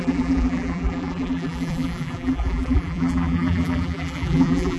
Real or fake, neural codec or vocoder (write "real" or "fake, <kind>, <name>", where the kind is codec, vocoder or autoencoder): fake, vocoder, BigVGAN v2